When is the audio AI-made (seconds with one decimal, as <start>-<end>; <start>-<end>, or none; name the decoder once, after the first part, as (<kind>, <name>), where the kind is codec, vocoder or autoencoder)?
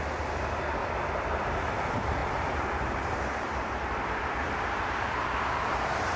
0.8-1.8 (vocoder, BigVGAN v2); 2.2-6.2